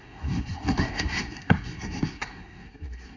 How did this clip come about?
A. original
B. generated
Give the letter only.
B